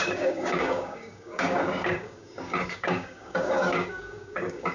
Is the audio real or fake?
fake